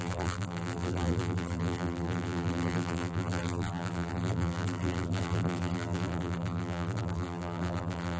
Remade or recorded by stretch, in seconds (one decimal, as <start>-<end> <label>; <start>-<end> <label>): 0.0-8.2 remade